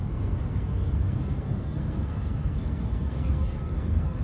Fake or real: fake